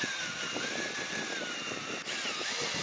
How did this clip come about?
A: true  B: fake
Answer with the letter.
A